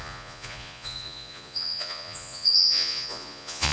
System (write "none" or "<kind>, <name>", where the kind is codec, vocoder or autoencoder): vocoder, Vocos